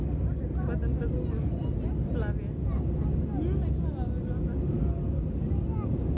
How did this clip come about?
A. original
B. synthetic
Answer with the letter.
A